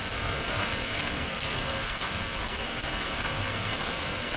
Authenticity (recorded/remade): remade